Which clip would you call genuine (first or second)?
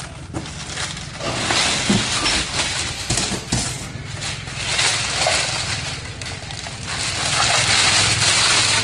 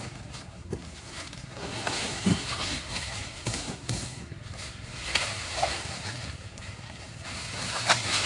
first